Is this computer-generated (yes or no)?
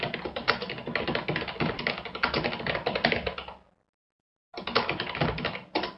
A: no